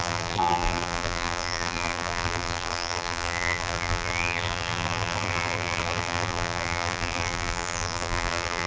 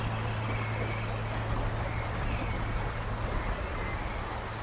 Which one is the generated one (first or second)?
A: first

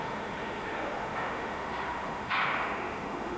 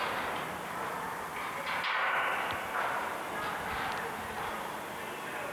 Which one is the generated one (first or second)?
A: first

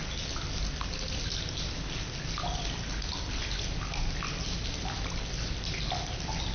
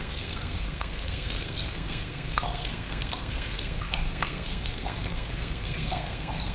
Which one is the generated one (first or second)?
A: second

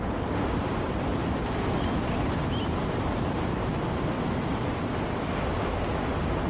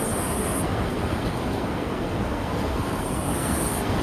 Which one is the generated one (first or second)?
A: second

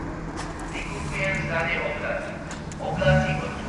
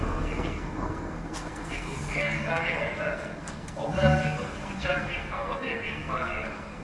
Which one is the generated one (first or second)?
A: second